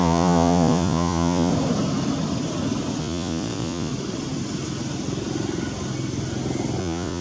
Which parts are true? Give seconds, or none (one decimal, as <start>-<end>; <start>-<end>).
1.5-3.0; 3.9-6.8